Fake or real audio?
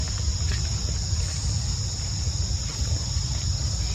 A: real